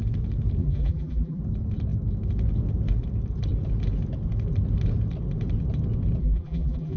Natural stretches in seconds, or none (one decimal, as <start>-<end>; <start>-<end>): 0.0-0.6; 1.4-6.2